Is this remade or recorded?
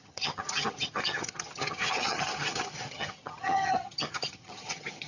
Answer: remade